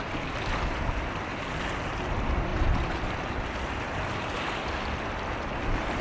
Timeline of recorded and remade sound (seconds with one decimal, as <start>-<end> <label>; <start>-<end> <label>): 0.0-6.0 recorded